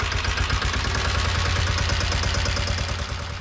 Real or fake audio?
real